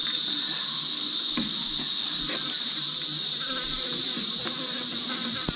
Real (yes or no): yes